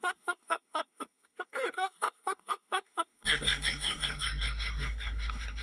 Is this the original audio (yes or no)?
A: no